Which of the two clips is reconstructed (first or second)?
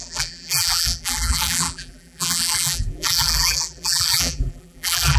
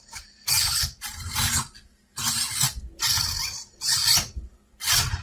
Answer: first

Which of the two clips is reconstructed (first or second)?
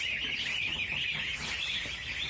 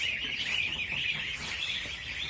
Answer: second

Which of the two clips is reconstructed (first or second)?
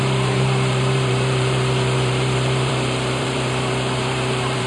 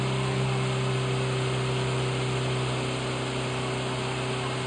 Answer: first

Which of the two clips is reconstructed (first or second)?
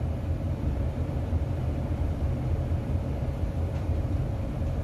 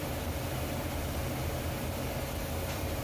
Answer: first